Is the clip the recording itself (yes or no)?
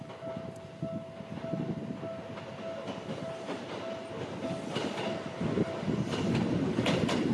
yes